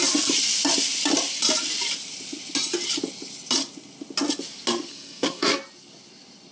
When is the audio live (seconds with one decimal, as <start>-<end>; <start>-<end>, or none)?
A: 0.0-4.9; 5.6-6.5